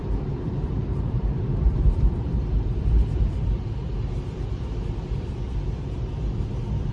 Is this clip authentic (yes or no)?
no